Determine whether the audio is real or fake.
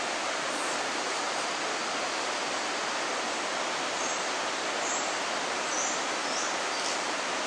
real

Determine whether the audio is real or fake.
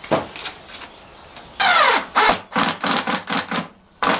real